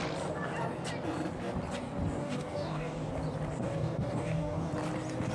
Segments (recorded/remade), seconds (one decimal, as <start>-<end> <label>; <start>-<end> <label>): 0.0-2.2 recorded; 2.2-3.1 remade; 3.1-3.6 recorded; 3.6-4.7 remade; 4.7-5.3 recorded